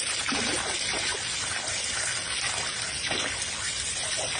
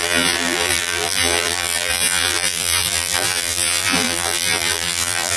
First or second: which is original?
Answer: first